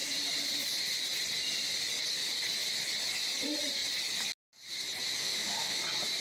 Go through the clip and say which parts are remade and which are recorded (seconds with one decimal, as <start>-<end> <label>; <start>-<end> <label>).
0.0-5.2 recorded; 5.2-5.8 remade; 5.8-6.2 recorded